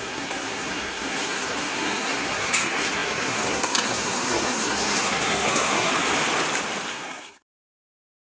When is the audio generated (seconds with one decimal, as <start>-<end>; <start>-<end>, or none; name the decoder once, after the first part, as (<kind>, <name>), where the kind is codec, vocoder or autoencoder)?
0.0-5.9 (codec, SNAC); 6.9-8.2